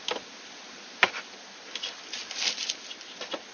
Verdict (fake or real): real